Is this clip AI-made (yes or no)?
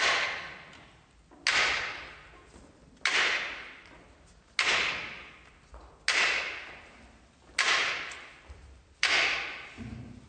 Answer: no